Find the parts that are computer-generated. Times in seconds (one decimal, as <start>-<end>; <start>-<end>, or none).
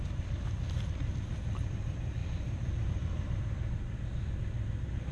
0.0-5.1